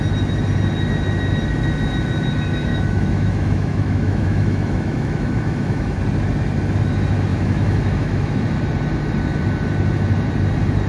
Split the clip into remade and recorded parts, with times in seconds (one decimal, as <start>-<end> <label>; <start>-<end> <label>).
0.0-2.7 recorded; 2.7-6.0 remade; 6.0-7.3 recorded; 7.3-8.3 remade; 8.3-10.9 recorded